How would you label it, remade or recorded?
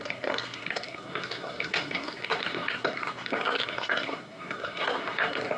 remade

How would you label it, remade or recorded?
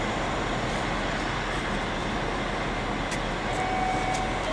recorded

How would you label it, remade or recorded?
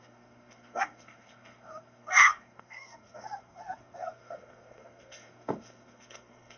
remade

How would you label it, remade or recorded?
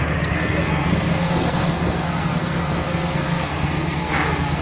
remade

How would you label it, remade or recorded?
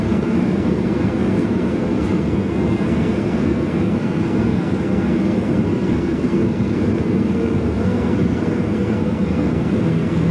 remade